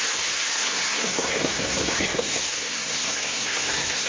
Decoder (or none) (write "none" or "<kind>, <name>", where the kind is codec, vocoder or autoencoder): codec, SNAC